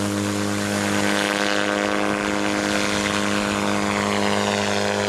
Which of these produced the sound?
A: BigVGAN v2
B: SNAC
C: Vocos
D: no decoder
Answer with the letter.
D